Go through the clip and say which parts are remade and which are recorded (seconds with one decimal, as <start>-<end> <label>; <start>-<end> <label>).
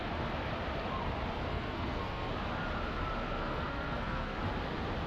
0.0-1.5 recorded; 1.5-2.3 remade; 2.3-3.2 recorded; 3.2-4.4 remade; 4.4-5.1 recorded